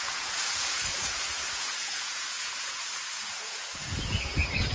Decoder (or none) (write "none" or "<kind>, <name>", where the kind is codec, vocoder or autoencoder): vocoder, Vocos